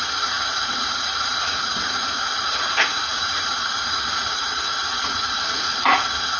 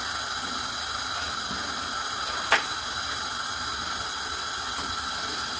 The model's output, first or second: first